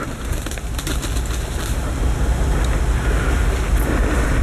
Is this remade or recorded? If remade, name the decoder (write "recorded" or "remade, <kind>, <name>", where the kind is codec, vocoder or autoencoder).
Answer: recorded